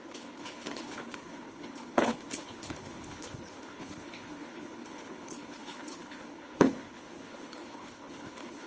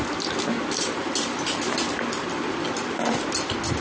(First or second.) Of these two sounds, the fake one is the first